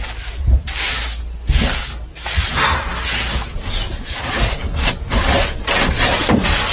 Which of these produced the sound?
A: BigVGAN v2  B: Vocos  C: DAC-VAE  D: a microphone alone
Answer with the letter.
D